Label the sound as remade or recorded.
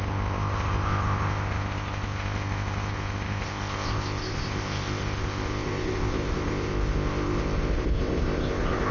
remade